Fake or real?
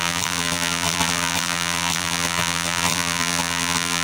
fake